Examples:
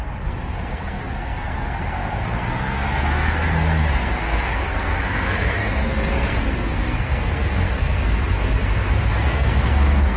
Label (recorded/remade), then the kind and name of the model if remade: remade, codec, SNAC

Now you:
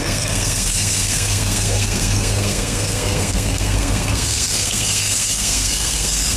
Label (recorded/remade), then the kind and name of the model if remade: remade, codec, SNAC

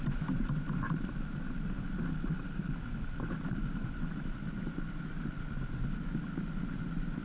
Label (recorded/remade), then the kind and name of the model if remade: recorded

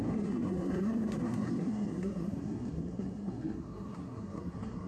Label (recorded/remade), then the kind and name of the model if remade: remade, codec, SNAC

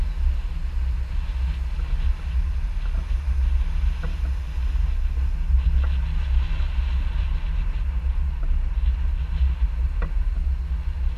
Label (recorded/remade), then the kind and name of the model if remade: recorded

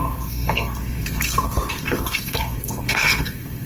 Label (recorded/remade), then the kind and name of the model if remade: remade, codec, SNAC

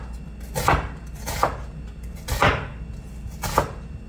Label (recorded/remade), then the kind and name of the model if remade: recorded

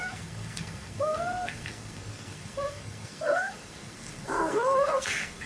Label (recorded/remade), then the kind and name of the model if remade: remade, codec, SNAC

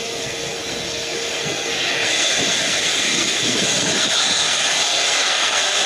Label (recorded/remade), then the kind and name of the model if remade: remade, codec, SNAC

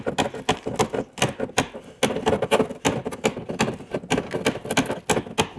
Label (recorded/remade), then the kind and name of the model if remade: recorded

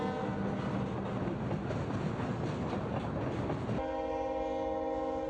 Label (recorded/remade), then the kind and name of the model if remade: recorded